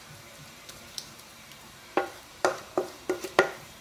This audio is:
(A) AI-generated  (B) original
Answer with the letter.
A